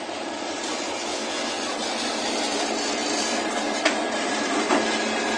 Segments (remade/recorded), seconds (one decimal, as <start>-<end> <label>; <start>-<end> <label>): 0.0-1.1 recorded; 1.1-1.6 remade; 1.6-5.4 recorded